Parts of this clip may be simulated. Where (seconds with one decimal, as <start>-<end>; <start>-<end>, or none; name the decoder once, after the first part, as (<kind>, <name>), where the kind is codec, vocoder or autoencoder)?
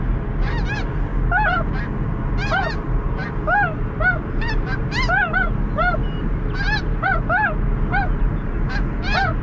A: none